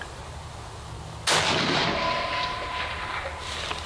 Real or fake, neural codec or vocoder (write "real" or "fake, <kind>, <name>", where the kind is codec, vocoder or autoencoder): real